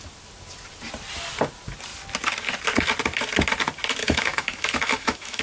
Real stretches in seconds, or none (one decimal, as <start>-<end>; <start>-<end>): 0.0-4.0